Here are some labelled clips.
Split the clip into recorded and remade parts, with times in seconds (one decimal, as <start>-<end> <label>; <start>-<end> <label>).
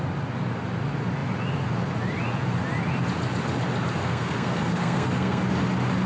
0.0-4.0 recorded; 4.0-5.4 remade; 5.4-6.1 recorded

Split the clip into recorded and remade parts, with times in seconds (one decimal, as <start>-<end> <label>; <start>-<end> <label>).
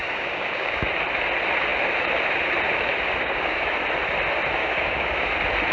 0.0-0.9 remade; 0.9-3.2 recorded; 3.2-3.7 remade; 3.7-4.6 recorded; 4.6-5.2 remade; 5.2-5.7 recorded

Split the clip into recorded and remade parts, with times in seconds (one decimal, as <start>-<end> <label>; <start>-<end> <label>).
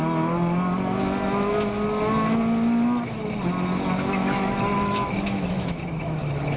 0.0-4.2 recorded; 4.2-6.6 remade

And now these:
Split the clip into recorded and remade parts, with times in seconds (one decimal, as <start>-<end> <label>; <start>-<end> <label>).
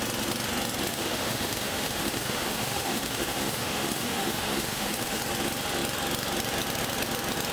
0.0-0.9 recorded; 0.9-5.2 remade; 5.2-7.5 recorded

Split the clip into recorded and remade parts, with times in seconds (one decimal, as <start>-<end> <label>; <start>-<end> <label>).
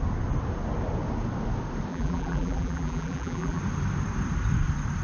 0.0-1.9 recorded; 1.9-3.6 remade; 3.6-5.0 recorded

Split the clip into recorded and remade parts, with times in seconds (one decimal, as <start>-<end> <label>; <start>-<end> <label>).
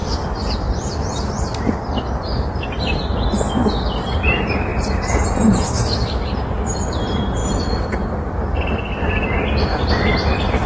0.0-4.7 remade; 4.7-6.2 recorded; 6.2-10.7 remade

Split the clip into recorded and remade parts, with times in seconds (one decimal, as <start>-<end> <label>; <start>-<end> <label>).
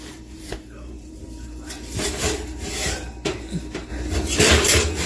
0.0-5.1 remade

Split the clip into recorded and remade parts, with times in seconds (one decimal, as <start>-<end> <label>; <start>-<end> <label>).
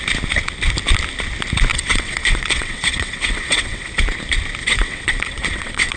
0.0-1.7 recorded; 1.7-4.0 remade; 4.0-4.6 recorded; 4.6-6.0 remade